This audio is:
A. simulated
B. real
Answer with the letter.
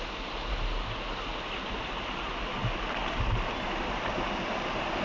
B